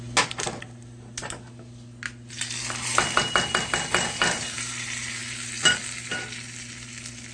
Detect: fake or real real